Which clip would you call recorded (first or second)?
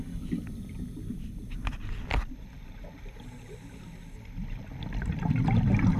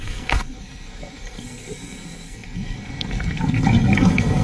first